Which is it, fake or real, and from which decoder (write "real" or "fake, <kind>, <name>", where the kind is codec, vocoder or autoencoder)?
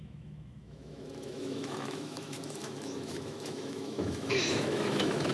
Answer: fake, autoencoder, DAC-VAE